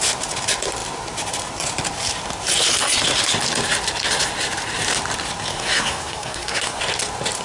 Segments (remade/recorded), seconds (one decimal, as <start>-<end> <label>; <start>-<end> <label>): 0.0-5.5 recorded; 5.5-6.8 remade; 6.8-7.4 recorded